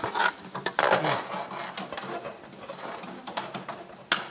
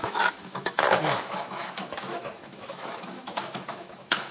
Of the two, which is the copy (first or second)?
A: second